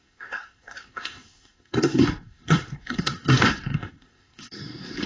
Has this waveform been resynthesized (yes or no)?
yes